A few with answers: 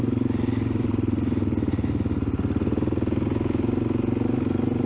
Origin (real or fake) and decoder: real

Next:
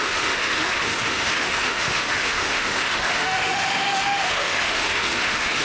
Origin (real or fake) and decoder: fake, autoencoder, DAC-VAE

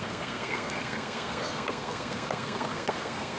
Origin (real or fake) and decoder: fake, codec, SNAC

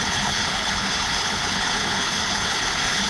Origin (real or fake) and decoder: fake, codec, HILCodec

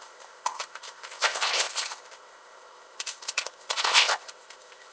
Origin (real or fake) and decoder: fake, codec, ZipCodec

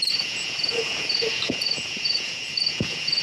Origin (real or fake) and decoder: fake, vocoder, Vocos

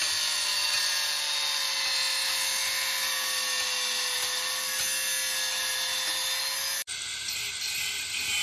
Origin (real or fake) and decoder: real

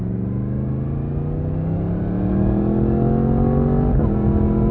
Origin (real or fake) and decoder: real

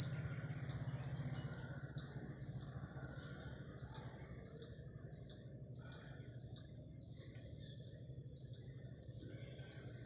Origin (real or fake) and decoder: real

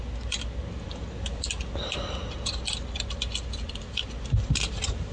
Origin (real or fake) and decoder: real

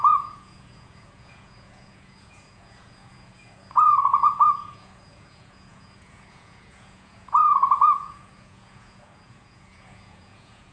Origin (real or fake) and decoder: fake, vocoder, Vocos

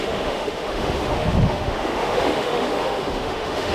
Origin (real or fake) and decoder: fake, autoencoder, DAC-VAE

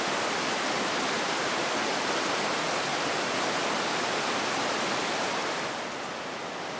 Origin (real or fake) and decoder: real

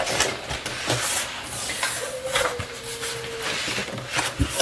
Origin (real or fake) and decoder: real